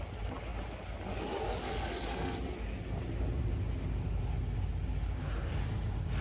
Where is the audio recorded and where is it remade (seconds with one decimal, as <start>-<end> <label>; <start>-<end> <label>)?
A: 0.0-6.2 recorded